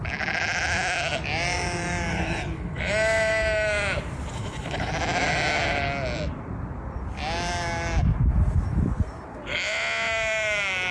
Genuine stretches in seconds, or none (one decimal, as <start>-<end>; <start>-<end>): 0.0-2.1; 2.8-4.4; 4.9-10.9